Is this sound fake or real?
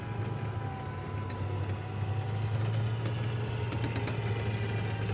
real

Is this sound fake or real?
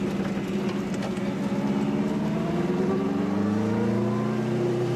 real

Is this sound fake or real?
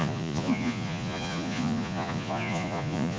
fake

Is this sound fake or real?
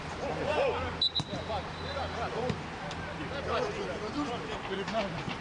real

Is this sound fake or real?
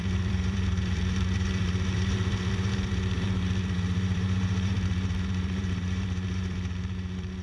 fake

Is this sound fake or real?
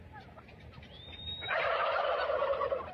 real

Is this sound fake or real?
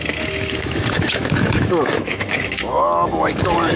fake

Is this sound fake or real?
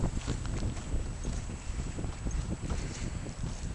real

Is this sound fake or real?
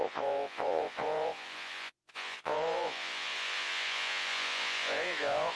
fake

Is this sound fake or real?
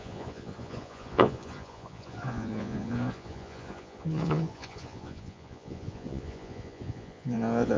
fake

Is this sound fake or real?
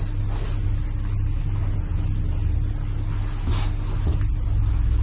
real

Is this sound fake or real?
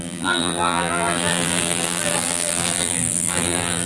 fake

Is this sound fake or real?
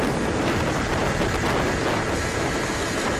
real